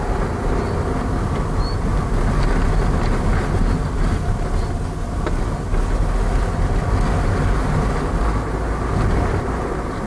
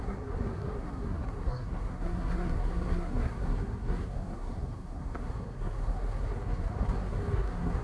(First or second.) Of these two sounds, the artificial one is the second